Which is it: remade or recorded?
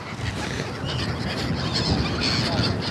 recorded